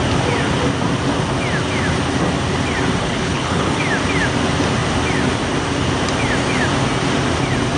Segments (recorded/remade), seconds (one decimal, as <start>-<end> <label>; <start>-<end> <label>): 0.0-3.0 recorded; 3.0-3.8 remade; 3.8-7.8 recorded